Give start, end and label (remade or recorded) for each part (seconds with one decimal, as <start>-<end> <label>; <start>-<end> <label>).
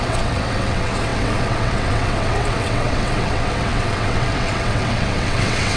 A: 0.0-5.8 remade